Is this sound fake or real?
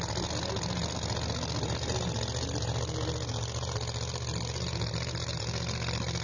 real